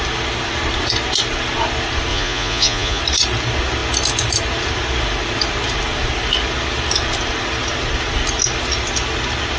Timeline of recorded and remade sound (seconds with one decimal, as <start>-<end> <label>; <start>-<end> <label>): 0.0-2.1 recorded; 2.1-3.0 remade; 3.0-9.6 recorded